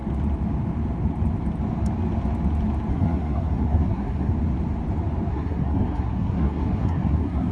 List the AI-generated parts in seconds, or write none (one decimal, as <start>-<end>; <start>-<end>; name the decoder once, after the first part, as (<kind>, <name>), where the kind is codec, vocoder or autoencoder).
2.9-4.3 (codec, SNAC); 5.3-7.5